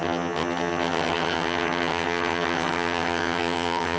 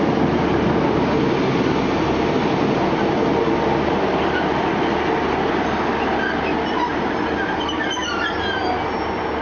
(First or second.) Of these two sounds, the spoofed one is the first